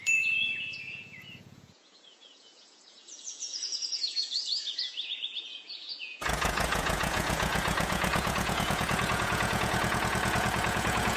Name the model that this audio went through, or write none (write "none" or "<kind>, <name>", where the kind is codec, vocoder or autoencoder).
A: vocoder, Vocos